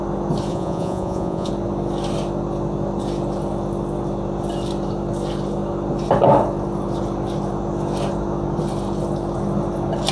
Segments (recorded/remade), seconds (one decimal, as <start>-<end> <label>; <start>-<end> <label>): 0.0-0.5 recorded; 0.5-1.5 remade; 1.5-10.1 recorded